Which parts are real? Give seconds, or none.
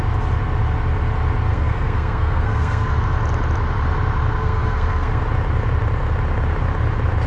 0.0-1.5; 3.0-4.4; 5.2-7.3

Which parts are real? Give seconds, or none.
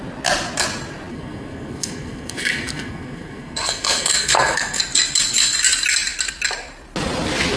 0.0-1.1; 4.8-7.6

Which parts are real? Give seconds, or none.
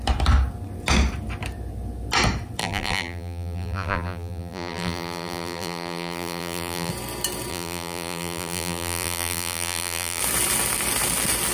0.0-2.6; 6.9-7.5; 10.2-11.5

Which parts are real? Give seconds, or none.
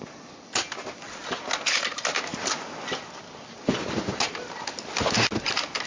0.0-5.9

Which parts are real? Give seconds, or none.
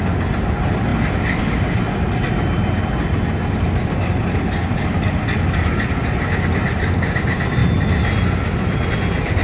0.0-9.4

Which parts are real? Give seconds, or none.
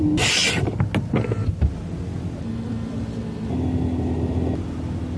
0.0-5.2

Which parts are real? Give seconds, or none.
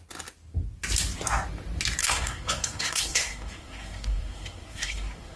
0.0-2.0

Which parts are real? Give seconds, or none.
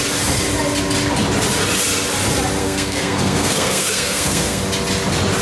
0.0-2.6; 4.6-5.4